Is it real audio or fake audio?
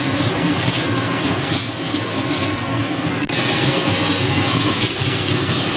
fake